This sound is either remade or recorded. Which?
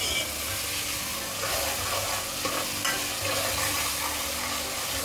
recorded